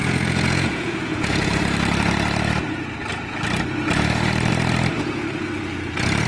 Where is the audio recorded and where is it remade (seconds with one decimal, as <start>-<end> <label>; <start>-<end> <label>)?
0.0-1.6 remade; 1.6-6.3 recorded